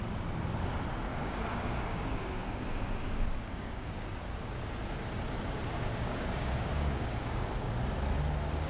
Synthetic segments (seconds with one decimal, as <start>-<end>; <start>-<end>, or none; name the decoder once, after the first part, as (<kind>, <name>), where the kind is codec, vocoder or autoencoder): 1.1-4.7 (codec, DAC); 5.9-7.7